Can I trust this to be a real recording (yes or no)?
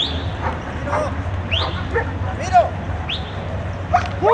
yes